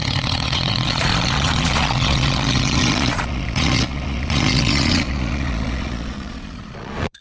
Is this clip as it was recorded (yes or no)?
no